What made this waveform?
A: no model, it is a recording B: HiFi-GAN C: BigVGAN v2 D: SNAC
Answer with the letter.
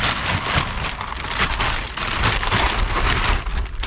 A